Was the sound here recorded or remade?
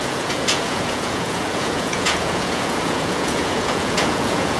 remade